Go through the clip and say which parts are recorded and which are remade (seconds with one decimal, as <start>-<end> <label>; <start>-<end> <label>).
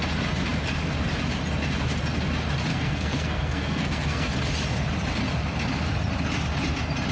0.0-2.7 recorded; 2.7-4.3 remade; 4.3-7.1 recorded